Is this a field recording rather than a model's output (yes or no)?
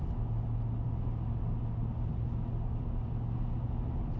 yes